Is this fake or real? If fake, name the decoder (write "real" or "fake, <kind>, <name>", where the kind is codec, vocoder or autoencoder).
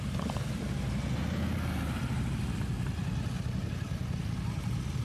real